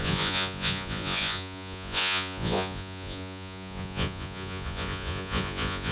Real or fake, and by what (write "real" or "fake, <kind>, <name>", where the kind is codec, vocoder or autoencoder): fake, vocoder, Vocos